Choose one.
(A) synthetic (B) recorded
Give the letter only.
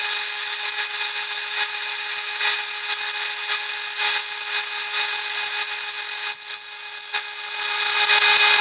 B